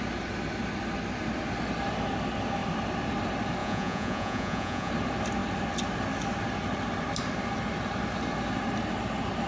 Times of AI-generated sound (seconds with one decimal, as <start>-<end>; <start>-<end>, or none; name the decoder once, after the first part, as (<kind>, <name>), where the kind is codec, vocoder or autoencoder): 3.6-4.9 (vocoder, Vocos)